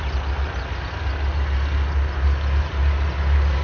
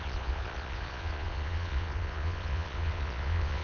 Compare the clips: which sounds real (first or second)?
first